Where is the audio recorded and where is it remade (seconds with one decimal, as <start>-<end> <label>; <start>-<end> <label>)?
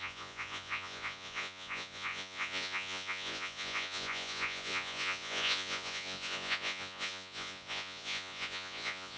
0.0-9.2 remade